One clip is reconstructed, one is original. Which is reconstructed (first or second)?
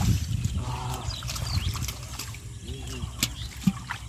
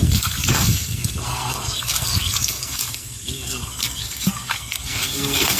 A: second